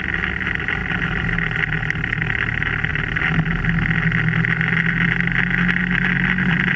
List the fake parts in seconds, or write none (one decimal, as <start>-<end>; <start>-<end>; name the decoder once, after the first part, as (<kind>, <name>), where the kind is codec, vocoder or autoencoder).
none